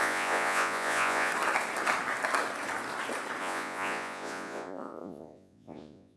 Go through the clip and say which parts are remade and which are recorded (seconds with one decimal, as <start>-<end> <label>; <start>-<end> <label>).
0.0-1.3 remade; 1.3-3.4 recorded; 3.4-6.2 remade